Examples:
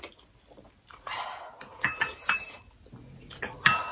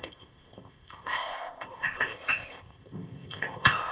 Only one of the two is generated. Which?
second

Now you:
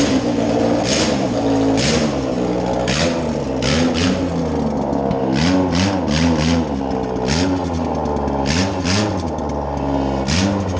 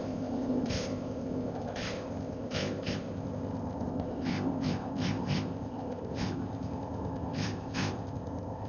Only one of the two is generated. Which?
second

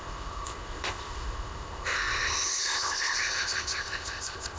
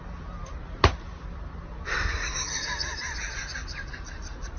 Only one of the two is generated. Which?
first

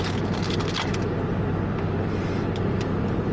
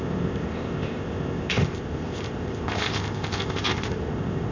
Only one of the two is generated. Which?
second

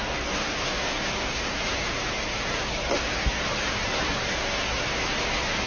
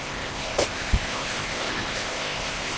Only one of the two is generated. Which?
second